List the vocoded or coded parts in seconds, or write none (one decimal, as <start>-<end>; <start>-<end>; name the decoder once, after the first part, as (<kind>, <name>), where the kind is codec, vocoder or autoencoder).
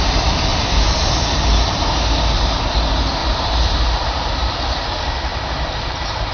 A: 0.5-1.1 (vocoder, BigVGAN v2); 3.2-3.8; 5.3-6.3